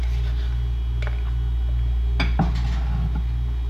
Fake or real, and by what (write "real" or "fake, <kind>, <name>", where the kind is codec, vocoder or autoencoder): real